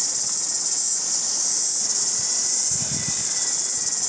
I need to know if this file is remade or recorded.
recorded